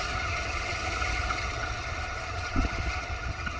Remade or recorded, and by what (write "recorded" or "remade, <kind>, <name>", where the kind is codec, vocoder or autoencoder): remade, vocoder, HiFi-GAN